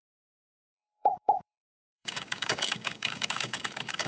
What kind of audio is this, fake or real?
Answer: fake